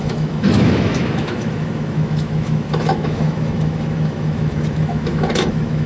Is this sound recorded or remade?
remade